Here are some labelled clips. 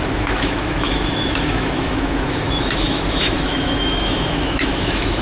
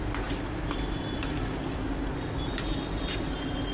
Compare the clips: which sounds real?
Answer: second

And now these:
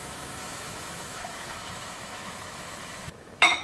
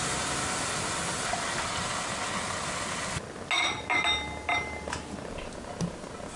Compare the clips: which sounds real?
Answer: second